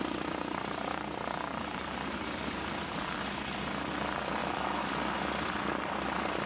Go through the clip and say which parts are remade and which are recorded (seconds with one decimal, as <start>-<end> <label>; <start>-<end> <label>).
0.0-4.4 recorded; 4.4-4.9 remade; 4.9-6.5 recorded